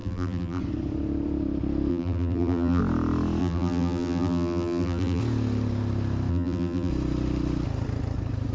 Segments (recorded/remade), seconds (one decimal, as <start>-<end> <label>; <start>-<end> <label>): 0.0-0.6 remade; 0.6-1.9 recorded; 1.9-2.8 remade; 2.8-3.4 recorded; 3.4-5.2 remade; 5.2-6.3 recorded; 6.3-6.9 remade; 6.9-8.5 recorded